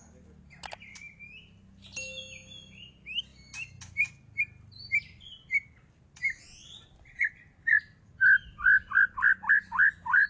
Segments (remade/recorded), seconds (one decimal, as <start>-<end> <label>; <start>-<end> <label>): 0.0-10.3 recorded